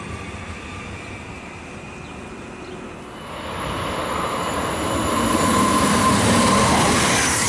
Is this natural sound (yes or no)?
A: yes